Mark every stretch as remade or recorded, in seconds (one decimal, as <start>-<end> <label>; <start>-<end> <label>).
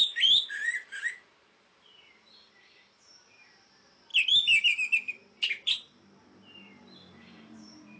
0.0-4.1 remade; 4.1-5.1 recorded; 5.1-8.0 remade